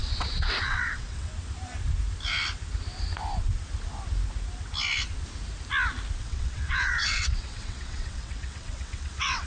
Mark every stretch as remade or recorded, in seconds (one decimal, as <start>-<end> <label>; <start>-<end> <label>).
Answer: 0.0-1.3 remade; 1.3-6.2 recorded; 6.2-9.5 remade